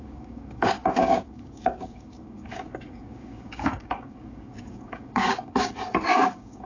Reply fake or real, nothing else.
fake